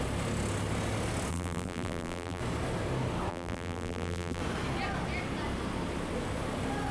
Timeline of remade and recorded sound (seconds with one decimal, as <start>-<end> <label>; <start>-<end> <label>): 0.0-1.3 recorded; 1.3-2.4 remade; 2.4-3.3 recorded; 3.3-4.4 remade; 4.4-6.9 recorded